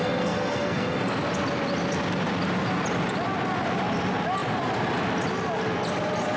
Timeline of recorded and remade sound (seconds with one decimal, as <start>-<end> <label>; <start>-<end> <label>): 0.0-1.1 remade; 1.1-6.4 recorded